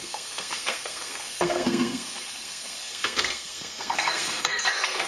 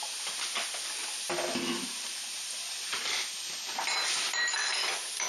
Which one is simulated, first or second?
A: first